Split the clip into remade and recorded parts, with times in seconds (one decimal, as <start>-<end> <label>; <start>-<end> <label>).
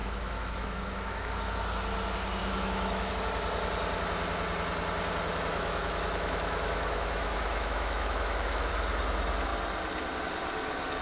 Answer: 0.0-1.3 remade; 1.3-2.4 recorded; 2.4-3.1 remade; 3.1-5.5 recorded; 5.5-8.7 remade; 8.7-11.0 recorded